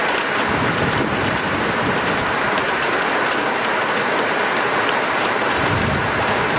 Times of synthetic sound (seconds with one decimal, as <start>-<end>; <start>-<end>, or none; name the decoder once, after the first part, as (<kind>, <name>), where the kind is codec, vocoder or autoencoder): 0.0-2.9 (vocoder, BigVGAN v2); 4.2-6.6